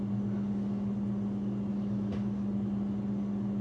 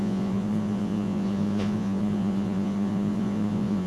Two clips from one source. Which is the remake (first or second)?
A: second